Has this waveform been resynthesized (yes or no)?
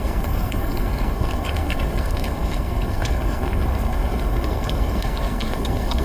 yes